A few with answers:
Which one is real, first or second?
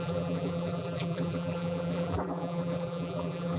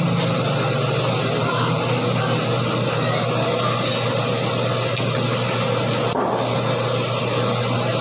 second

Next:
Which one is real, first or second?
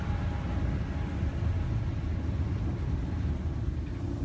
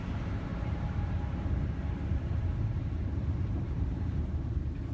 first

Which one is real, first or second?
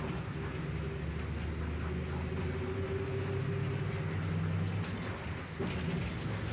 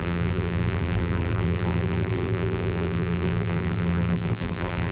first